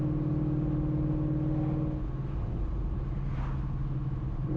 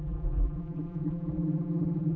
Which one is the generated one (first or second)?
second